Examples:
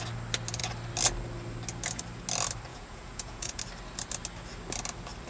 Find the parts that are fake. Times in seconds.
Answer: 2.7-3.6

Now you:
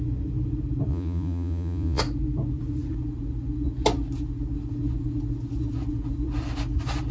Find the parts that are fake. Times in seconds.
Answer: 0.9-2.0

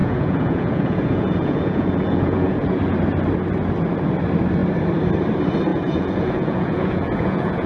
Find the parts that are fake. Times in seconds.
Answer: 0.0-2.8; 5.7-7.7